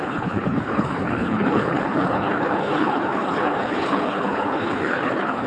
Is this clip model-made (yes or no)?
yes